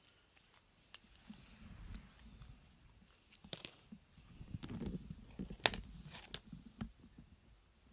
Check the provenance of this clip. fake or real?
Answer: real